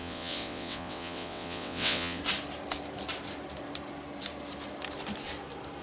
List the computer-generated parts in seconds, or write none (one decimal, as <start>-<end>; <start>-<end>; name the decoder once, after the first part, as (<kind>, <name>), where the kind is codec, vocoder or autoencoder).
0.0-2.2 (vocoder, WaveNeXt)